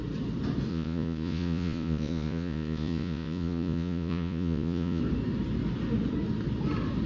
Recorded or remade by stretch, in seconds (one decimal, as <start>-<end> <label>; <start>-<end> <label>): 0.0-0.7 recorded; 0.7-5.0 remade; 5.0-7.1 recorded